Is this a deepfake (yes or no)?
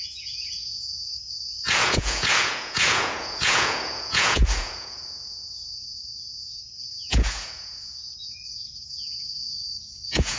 yes